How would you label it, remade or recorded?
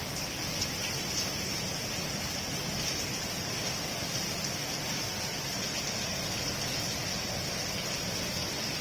recorded